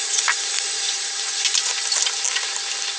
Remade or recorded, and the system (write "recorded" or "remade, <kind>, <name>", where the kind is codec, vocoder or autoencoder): remade, vocoder, BigVGAN v2